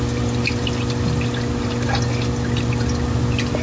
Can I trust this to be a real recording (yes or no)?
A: yes